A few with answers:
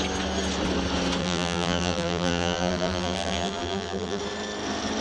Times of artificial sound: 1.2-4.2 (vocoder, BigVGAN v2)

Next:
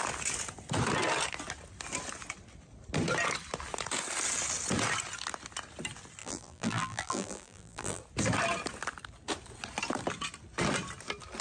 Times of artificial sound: 6.2-8.0 (vocoder, BigVGAN v2)

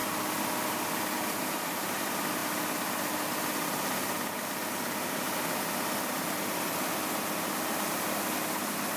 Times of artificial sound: none

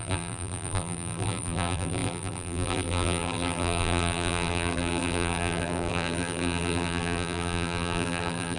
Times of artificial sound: 0.0-8.6 (vocoder, BigVGAN v2)

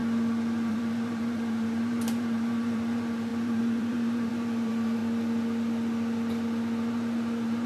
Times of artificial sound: 0.7-5.0 (vocoder, BigVGAN v2); 6.9-7.7